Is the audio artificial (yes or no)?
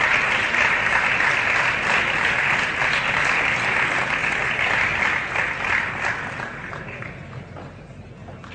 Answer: no